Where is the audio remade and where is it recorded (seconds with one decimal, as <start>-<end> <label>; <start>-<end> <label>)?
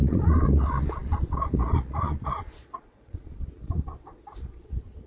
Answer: 0.0-5.1 remade